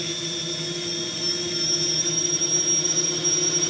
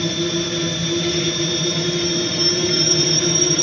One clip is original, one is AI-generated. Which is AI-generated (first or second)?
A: second